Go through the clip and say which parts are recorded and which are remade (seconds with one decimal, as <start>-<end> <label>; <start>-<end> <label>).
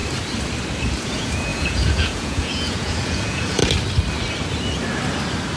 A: 0.0-1.0 recorded; 1.0-3.6 remade; 3.6-5.6 recorded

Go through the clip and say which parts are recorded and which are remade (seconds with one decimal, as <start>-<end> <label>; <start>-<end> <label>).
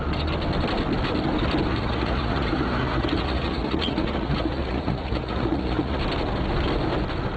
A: 0.0-1.7 recorded; 1.7-6.0 remade; 6.0-7.4 recorded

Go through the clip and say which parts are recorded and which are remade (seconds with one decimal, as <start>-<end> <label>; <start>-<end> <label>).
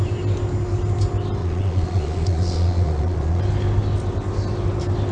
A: 0.0-1.4 recorded; 1.4-3.4 remade; 3.4-5.1 recorded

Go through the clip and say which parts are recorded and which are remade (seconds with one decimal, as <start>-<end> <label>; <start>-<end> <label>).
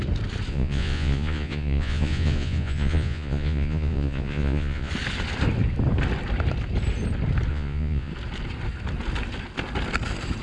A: 0.0-0.5 recorded; 0.5-4.9 remade; 4.9-7.5 recorded; 7.5-8.1 remade; 8.1-10.4 recorded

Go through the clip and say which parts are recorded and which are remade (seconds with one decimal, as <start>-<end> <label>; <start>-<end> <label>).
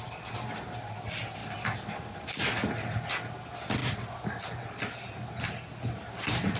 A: 0.0-6.6 recorded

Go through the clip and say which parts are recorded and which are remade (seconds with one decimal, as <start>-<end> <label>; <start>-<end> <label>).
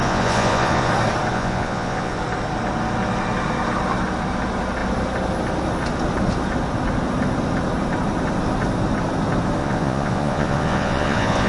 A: 0.0-0.9 remade; 0.9-1.3 recorded; 1.3-2.2 remade; 2.2-9.6 recorded; 9.6-11.5 remade